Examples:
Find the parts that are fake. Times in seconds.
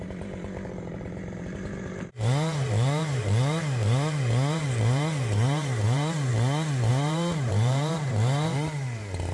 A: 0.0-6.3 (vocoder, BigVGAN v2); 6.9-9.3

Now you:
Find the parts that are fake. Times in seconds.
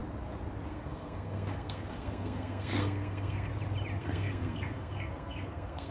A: 0.7-3.5 (codec, SNAC); 4.0-5.9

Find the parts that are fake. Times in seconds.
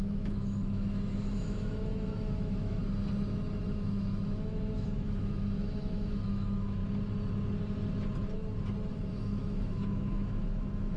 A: 0.0-2.8 (autoencoder, DAC-VAE); 3.6-6.8; 8.9-11.0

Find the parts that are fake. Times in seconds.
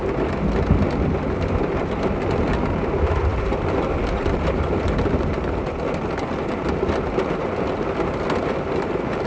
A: 3.3-6.0 (vocoder, BigVGAN v2)